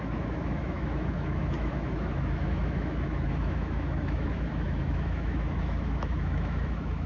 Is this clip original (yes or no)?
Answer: no